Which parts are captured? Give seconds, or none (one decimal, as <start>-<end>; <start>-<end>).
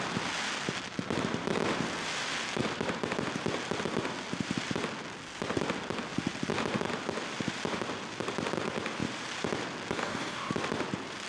0.0-10.0; 10.5-11.3